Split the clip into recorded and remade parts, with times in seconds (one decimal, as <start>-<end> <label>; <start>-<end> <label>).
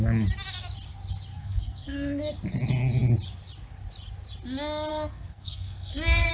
0.0-1.3 recorded; 1.3-2.3 remade; 2.3-4.9 recorded; 4.9-6.3 remade